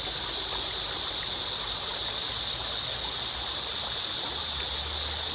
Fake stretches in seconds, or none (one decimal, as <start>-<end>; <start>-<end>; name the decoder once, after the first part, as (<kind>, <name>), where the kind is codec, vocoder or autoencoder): none